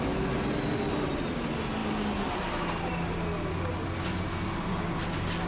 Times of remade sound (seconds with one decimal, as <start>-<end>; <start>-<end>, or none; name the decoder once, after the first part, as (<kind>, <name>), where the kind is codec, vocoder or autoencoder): none